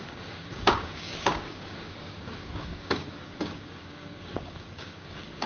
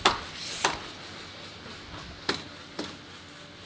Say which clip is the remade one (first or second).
first